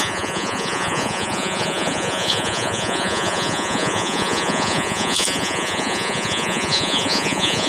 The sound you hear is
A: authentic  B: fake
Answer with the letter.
B